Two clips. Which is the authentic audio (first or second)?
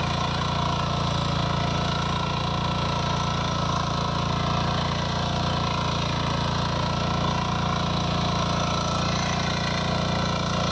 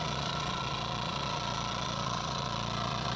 first